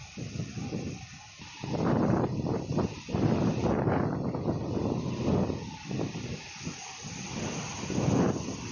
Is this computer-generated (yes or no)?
no